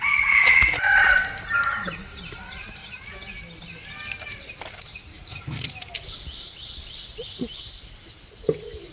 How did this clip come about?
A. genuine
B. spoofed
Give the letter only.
A